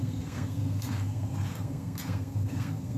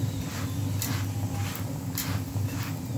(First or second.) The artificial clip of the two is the first